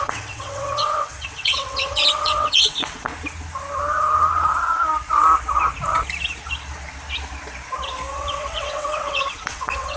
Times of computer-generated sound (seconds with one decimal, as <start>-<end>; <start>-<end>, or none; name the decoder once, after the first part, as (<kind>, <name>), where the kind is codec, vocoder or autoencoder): 0.0-3.1 (vocoder, WaveNeXt); 8.1-10.0